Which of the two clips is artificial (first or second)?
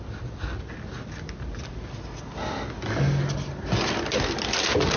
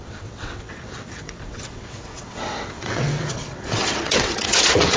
second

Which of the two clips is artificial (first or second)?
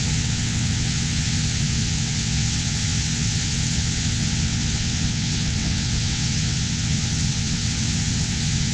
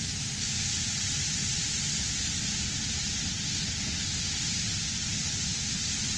first